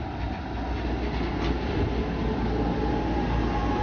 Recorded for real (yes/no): yes